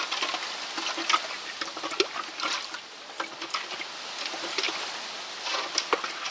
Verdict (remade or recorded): recorded